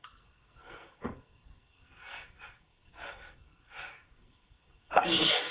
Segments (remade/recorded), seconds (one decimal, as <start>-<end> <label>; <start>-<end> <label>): 0.0-5.5 remade